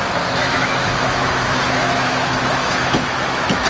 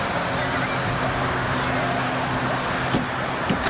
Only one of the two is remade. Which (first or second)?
first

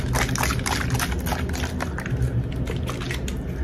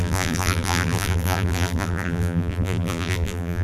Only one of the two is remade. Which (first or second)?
second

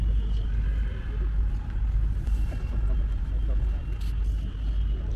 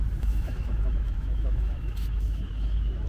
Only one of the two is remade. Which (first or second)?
second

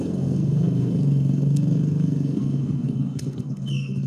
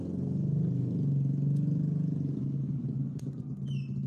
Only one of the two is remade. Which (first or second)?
first